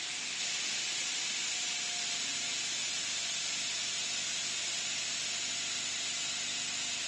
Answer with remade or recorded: recorded